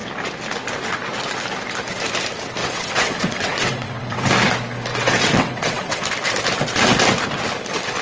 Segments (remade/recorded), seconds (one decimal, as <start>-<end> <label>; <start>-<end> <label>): 0.0-2.6 recorded; 2.6-4.3 remade; 4.3-4.9 recorded; 4.9-6.0 remade; 6.0-8.0 recorded